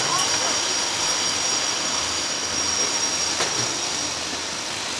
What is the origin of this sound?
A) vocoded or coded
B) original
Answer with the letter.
B